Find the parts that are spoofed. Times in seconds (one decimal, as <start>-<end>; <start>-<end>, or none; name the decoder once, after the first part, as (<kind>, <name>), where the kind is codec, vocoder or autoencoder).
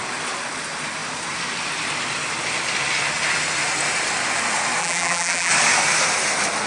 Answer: 4.8-5.5 (vocoder, BigVGAN v2)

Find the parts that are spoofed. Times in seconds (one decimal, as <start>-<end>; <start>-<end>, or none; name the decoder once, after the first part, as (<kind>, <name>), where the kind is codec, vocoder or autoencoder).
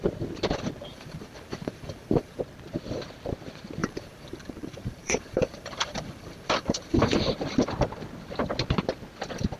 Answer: 0.9-2.4 (vocoder, BigVGAN v2); 3.8-7.2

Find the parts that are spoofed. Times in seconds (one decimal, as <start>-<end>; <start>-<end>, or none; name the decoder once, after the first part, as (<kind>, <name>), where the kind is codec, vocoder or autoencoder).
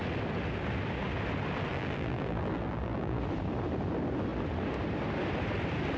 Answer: 1.7-3.2 (vocoder, BigVGAN v2)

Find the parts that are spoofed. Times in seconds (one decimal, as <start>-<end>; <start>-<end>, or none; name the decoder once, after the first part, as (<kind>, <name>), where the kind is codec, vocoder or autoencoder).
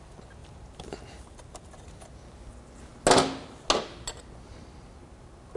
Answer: 0.4-1.6 (vocoder, BigVGAN v2)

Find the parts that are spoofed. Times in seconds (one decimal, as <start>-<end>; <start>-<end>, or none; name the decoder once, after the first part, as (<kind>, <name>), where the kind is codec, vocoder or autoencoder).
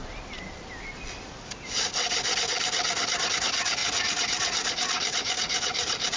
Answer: 3.8-6.2 (vocoder, BigVGAN v2)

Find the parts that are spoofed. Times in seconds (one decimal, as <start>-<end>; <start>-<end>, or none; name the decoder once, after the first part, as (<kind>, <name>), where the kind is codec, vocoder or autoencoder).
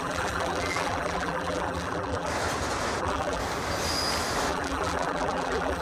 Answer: 0.0-2.3 (vocoder, BigVGAN v2); 3.0-3.4; 4.5-5.8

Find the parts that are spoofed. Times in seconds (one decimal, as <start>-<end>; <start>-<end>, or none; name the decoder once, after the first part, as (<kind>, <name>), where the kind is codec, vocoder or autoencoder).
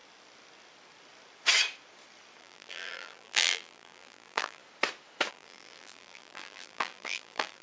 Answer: 2.4-4.6 (vocoder, BigVGAN v2); 5.3-7.6